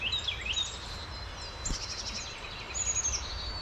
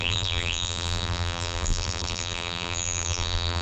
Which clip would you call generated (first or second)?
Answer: second